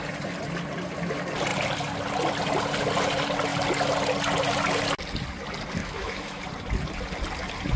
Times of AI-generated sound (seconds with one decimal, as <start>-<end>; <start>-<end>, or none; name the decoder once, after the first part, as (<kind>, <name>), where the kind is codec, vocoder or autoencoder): 5.8-6.4 (autoencoder, DAC-VAE)